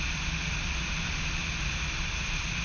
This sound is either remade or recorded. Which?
recorded